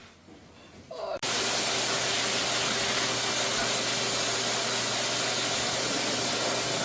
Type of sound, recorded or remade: recorded